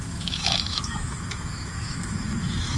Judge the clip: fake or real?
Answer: fake